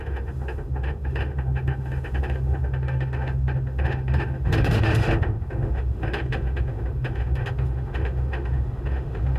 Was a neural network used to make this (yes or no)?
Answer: yes